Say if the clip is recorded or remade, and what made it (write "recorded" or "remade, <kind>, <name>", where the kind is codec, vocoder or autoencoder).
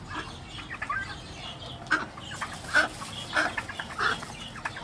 recorded